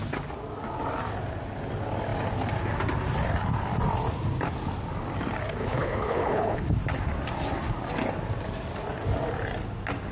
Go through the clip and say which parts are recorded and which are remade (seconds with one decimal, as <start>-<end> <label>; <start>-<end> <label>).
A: 0.0-5.6 recorded; 5.6-6.7 remade; 6.7-10.1 recorded